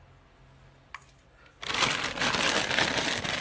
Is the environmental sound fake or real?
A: real